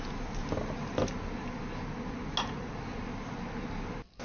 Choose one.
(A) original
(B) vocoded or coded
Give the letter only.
A